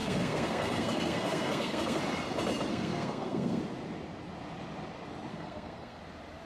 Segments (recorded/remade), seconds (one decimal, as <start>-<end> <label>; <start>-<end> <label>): 0.0-2.0 remade; 2.0-2.7 recorded; 2.7-3.6 remade; 3.6-5.3 recorded; 5.3-6.0 remade; 6.0-6.5 recorded